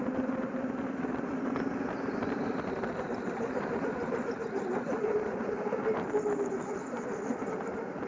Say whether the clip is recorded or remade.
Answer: recorded